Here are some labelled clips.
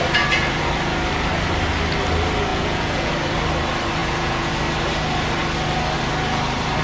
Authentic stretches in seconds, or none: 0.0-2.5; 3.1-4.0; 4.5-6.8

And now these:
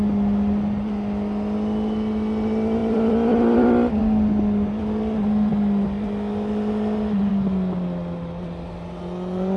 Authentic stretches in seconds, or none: 0.0-9.6

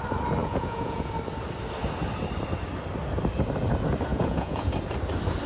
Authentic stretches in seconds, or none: 0.0-0.4; 1.1-4.1; 4.7-5.5

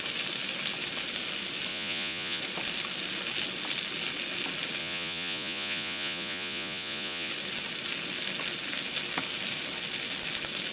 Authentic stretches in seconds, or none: 0.0-1.7; 2.4-4.8; 7.3-10.7

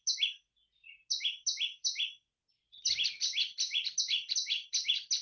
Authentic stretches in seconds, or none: 0.0-5.2

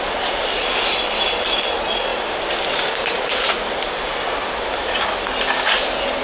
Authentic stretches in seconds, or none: 0.0-2.1; 5.0-6.2

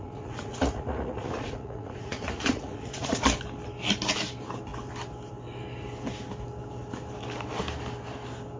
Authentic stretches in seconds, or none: 3.2-8.6